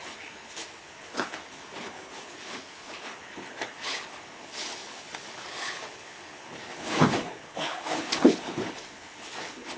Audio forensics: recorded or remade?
remade